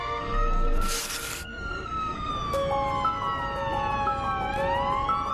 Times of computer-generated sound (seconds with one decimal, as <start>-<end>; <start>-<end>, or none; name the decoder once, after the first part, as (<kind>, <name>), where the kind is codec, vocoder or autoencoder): 0.0-2.3 (codec, SNAC)